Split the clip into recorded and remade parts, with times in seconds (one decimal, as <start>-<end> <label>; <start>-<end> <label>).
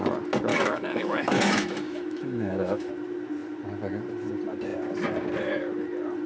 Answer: 0.0-0.5 recorded; 0.5-2.9 remade; 2.9-6.3 recorded